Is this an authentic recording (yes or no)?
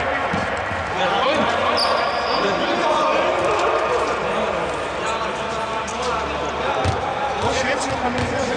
yes